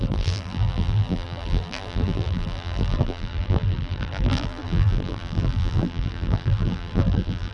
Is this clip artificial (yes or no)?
yes